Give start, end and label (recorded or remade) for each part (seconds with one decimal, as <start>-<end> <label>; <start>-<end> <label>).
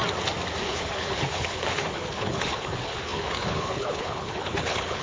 0.0-0.7 recorded; 0.7-5.0 remade